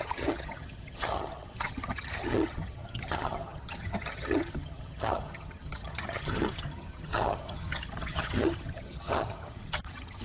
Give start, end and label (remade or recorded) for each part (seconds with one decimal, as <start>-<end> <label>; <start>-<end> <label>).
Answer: 0.0-10.2 remade